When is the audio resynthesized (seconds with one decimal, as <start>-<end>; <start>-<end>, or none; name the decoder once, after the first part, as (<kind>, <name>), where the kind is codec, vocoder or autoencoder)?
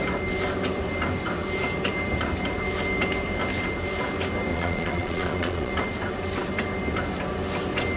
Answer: 4.5-5.7 (vocoder, Vocos)